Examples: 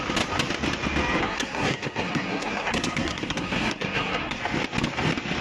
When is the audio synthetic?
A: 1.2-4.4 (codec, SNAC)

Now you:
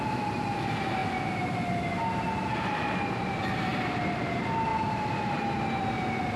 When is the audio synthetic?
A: none

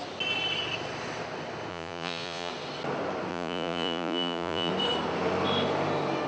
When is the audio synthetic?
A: 1.7-2.5 (vocoder, Vocos); 3.3-4.7

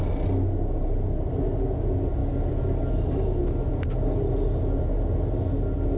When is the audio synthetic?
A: none

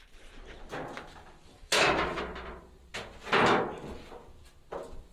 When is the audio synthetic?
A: 1.5-2.2 (autoencoder, DAC-VAE)

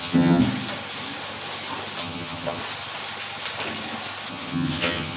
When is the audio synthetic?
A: 0.0-0.4 (vocoder, HiFi-GAN); 2.0-2.6; 4.3-5.2